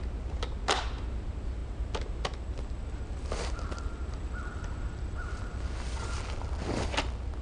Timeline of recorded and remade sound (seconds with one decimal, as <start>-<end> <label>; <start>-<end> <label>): 0.0-7.4 recorded